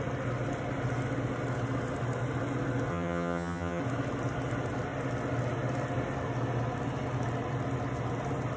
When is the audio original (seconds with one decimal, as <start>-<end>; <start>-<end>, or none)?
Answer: 0.0-2.9; 3.8-8.6